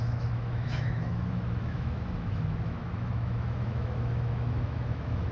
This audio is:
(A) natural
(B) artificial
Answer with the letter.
B